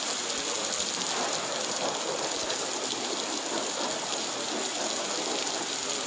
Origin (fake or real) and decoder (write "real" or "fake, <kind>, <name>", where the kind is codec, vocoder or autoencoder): real